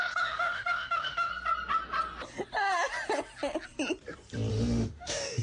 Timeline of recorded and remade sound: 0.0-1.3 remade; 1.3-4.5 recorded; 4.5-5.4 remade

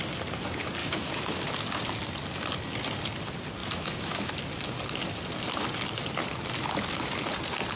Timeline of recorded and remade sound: 0.0-0.8 recorded; 0.8-1.4 remade; 1.4-3.6 recorded; 3.6-4.3 remade; 4.3-7.8 recorded

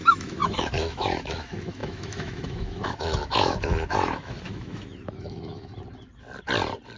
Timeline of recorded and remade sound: 0.0-5.7 remade; 5.7-7.0 recorded

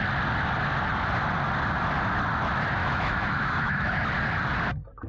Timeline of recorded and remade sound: 0.0-2.8 recorded; 2.8-3.9 remade; 3.9-5.1 recorded

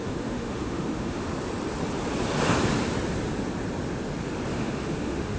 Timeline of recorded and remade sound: 0.0-1.3 remade; 1.3-4.5 recorded; 4.5-5.4 remade

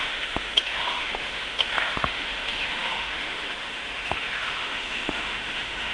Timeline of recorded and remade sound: 0.0-5.9 remade